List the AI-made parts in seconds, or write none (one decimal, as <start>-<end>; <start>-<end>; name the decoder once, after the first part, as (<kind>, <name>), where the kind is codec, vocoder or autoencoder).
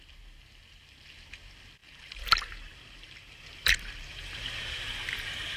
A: 1.8-5.6 (vocoder, BigVGAN v2)